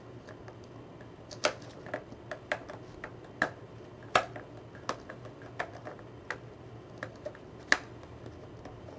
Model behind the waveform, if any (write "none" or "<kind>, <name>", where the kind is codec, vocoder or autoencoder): none